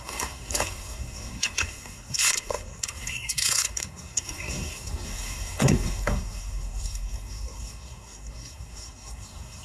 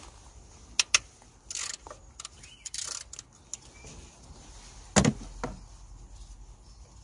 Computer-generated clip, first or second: first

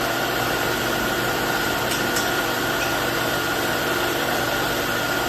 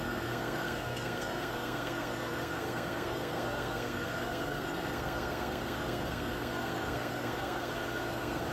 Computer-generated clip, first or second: second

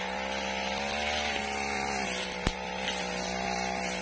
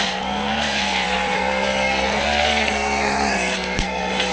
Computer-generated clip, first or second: second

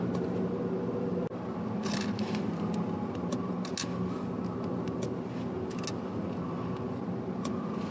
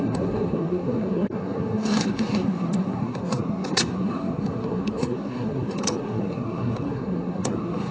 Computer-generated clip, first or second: second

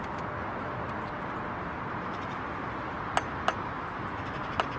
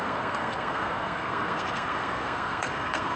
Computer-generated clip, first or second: second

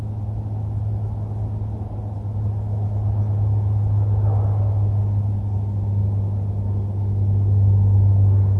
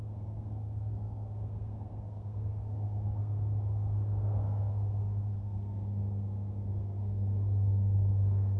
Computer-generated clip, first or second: second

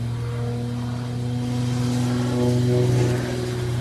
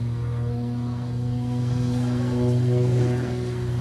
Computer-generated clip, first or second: second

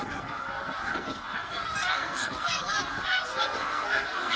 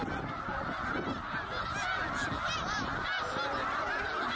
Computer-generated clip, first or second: first